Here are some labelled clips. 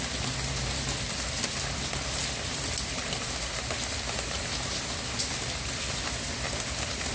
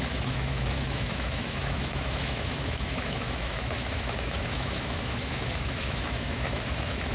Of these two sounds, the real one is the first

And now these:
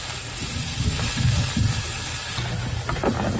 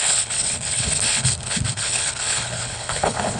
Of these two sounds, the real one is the first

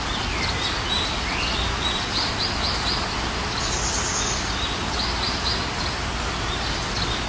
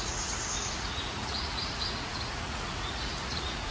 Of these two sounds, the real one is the first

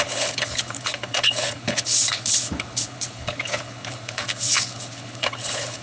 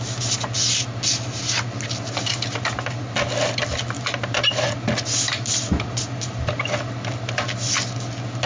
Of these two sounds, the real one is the second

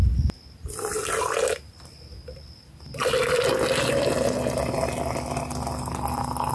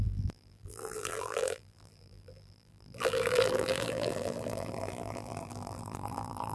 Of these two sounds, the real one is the first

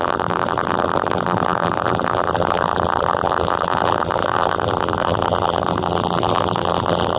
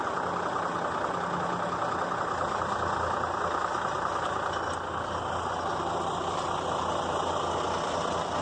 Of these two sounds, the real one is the second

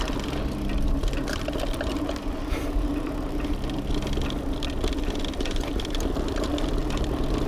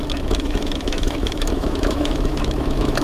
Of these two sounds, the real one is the first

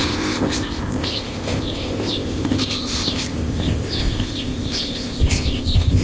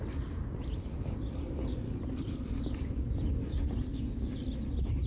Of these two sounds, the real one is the second